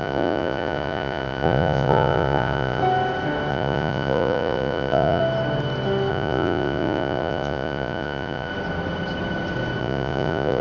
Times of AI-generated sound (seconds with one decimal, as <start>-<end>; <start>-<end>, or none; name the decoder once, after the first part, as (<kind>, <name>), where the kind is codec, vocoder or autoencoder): 0.0-2.8 (vocoder, Vocos); 3.5-5.2; 6.1-8.5; 9.8-10.6